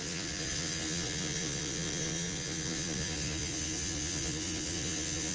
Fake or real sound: fake